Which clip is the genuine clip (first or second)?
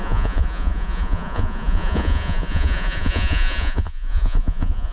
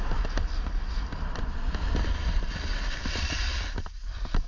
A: second